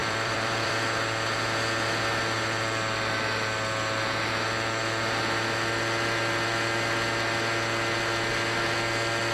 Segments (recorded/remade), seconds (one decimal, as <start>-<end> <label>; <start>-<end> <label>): 0.0-0.8 remade; 0.8-9.3 recorded